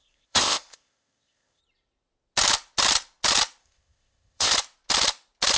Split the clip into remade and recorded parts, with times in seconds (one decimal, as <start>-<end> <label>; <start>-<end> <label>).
0.0-1.6 remade; 1.6-3.6 recorded; 3.6-4.5 remade; 4.5-5.6 recorded